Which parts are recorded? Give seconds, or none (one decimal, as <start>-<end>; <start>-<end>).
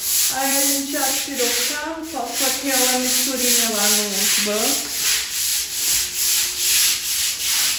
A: 2.3-3.7; 5.5-6.2; 6.8-7.8